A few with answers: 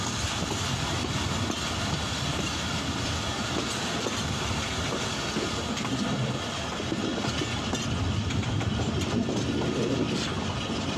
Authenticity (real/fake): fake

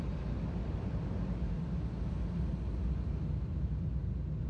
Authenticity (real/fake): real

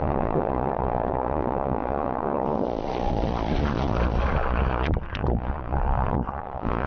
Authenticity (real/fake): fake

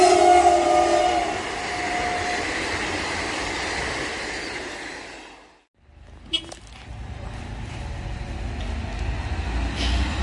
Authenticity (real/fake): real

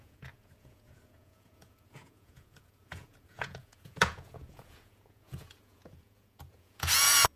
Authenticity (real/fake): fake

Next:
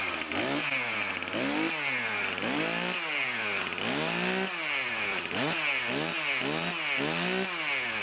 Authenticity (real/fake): real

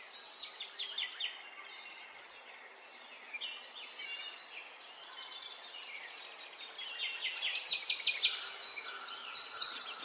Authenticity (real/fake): real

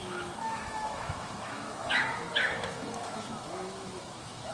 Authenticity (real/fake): fake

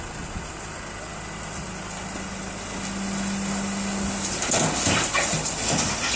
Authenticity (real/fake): real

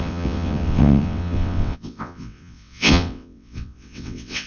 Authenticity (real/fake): fake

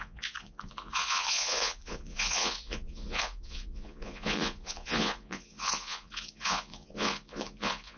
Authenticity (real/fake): fake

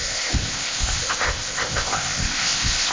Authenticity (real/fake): fake